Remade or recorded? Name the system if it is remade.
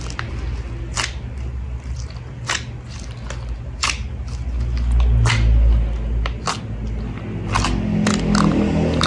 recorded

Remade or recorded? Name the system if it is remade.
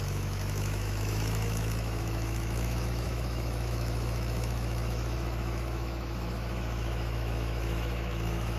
remade, autoencoder, DAC-VAE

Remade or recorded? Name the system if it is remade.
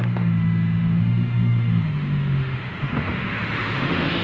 remade, autoencoder, DAC-VAE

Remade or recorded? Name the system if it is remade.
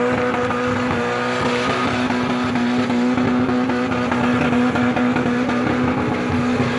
recorded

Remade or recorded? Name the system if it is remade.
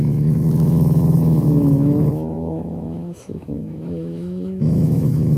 remade, autoencoder, DAC-VAE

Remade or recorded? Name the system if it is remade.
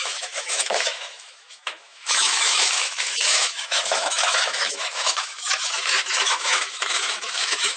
remade, autoencoder, DAC-VAE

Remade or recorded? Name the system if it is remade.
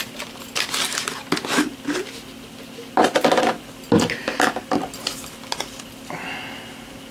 recorded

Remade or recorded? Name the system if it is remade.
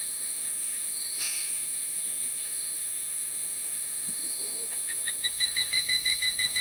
remade, autoencoder, DAC-VAE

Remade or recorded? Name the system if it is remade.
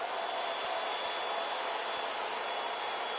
recorded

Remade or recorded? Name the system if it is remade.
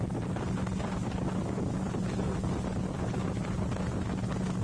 recorded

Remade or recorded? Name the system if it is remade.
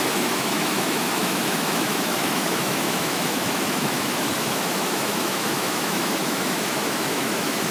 remade, autoencoder, DAC-VAE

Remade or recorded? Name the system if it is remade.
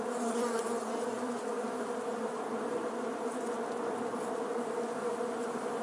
recorded